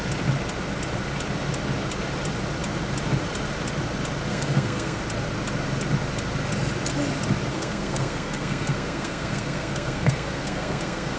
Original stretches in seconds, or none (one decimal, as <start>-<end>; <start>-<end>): 0.0-4.3; 5.0-7.5